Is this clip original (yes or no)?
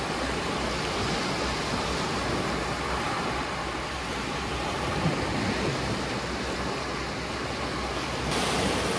yes